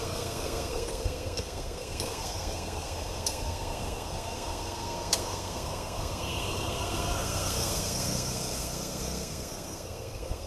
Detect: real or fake fake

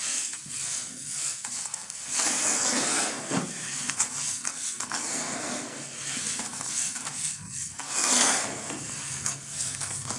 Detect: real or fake fake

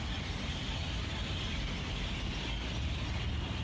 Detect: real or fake real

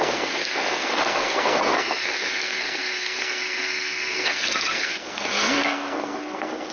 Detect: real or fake fake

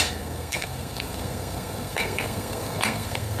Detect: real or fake fake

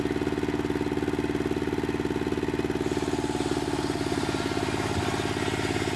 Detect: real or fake real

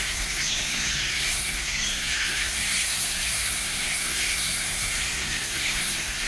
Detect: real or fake fake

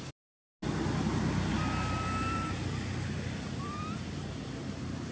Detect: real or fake real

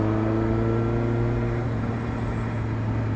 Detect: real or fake real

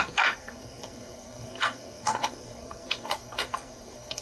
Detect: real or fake fake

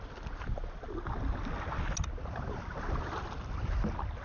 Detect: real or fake real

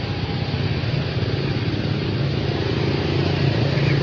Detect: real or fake real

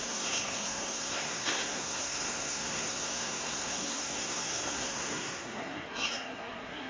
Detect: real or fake fake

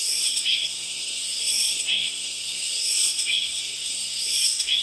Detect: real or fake fake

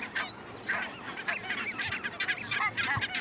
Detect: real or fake real